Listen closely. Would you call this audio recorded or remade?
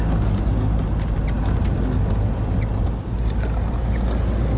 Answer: recorded